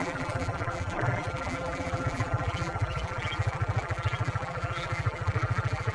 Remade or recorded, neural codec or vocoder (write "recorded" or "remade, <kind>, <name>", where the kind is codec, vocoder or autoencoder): remade, vocoder, BigVGAN v2